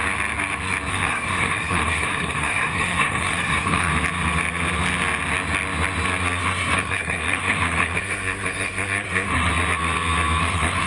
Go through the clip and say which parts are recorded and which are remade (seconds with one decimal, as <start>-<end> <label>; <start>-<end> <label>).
0.0-0.9 recorded; 0.9-3.9 remade; 3.9-6.4 recorded; 6.4-9.5 remade; 9.5-10.4 recorded; 10.4-10.9 remade